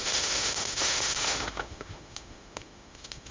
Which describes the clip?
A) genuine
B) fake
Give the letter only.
B